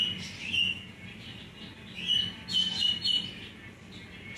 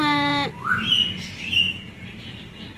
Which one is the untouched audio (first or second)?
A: first